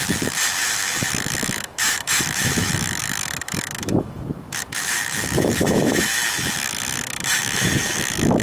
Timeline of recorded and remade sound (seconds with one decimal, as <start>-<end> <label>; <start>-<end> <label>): 0.0-8.4 remade